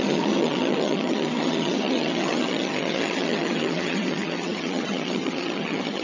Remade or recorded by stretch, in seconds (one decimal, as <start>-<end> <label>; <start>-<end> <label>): 0.0-6.0 remade